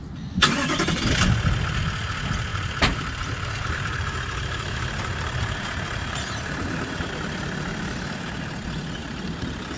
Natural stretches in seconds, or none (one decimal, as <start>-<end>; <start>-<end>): 0.0-2.5; 7.1-9.0